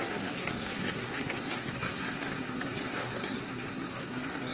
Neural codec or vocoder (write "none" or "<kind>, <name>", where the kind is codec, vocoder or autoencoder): codec, SNAC